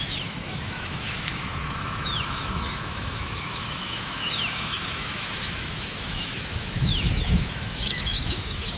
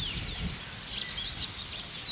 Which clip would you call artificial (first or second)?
first